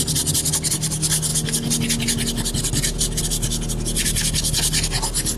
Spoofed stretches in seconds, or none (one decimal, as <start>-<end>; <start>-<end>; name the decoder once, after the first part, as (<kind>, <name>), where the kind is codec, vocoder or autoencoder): none